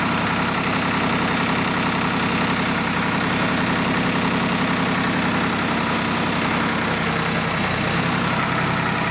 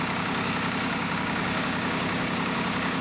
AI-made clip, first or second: second